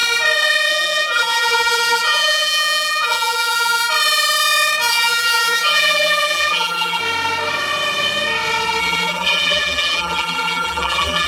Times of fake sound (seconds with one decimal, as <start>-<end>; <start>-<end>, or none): 0.7-3.8; 4.9-7.0; 8.8-11.3